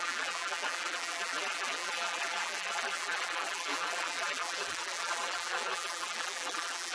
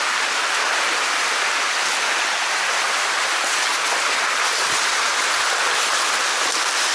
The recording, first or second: second